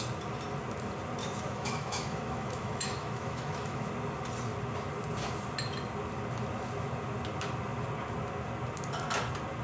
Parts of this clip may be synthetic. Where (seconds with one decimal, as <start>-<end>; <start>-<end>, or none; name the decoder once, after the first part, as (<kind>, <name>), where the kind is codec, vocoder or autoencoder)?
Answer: 1.2-3.9 (autoencoder, DAC-VAE)